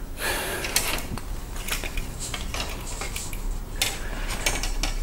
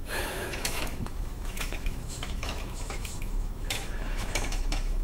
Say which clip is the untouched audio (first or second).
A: first